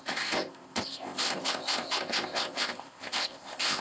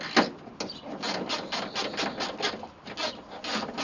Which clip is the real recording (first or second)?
second